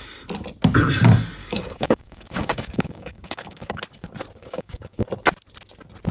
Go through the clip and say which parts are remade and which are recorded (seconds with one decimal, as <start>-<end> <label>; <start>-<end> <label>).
0.0-1.4 recorded; 1.4-3.8 remade; 3.8-4.4 recorded; 4.4-5.0 remade; 5.0-6.1 recorded